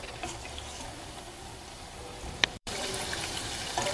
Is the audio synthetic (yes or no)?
yes